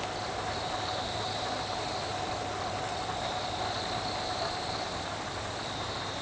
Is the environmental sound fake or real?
fake